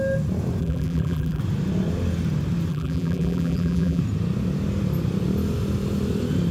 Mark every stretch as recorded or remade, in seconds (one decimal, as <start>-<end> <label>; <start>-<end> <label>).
0.0-0.6 recorded; 0.6-1.4 remade; 1.4-2.7 recorded; 2.7-4.0 remade; 4.0-6.5 recorded